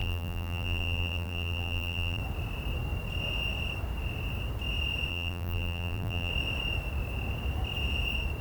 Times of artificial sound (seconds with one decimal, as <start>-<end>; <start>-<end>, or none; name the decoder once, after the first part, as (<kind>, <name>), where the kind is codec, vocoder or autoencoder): 0.0-2.2 (vocoder, BigVGAN v2); 5.1-6.3